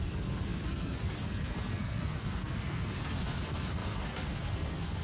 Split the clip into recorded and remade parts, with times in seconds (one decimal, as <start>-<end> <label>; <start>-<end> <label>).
0.0-5.0 remade